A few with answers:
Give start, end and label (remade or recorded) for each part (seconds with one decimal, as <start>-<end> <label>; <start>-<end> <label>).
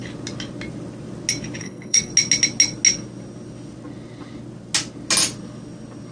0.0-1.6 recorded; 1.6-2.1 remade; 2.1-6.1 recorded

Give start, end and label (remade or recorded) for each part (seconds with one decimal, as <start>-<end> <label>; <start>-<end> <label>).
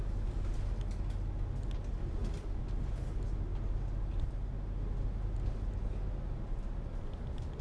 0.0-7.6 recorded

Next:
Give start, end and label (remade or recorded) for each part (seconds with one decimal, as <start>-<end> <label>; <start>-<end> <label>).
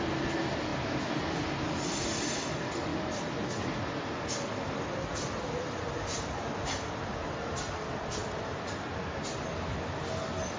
0.0-10.6 recorded